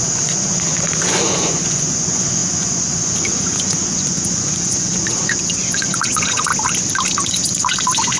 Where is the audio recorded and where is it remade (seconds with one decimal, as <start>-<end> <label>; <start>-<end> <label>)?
0.0-6.5 remade; 6.5-7.3 recorded; 7.3-8.2 remade